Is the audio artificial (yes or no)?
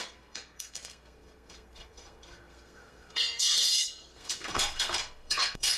yes